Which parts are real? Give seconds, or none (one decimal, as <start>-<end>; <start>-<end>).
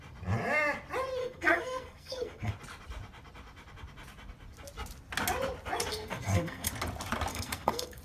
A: 0.0-1.2; 2.5-5.9; 6.7-7.3